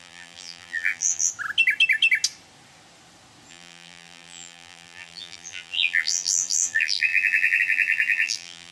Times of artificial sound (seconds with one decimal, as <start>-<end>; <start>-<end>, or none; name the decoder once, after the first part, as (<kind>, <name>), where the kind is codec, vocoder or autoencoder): 0.0-1.3 (vocoder, BigVGAN v2); 3.5-8.7